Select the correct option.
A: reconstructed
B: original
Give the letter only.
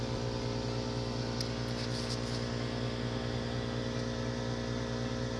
B